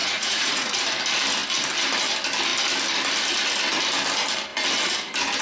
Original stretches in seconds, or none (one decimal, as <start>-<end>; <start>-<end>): 0.7-5.4